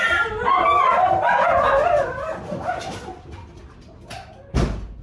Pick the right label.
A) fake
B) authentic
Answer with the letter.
B